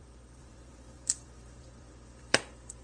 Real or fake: fake